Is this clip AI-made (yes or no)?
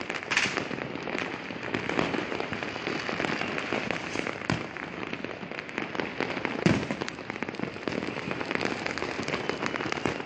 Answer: no